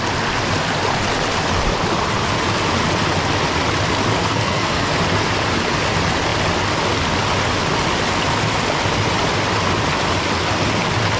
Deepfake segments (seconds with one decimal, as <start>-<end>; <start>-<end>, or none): 4.2-4.9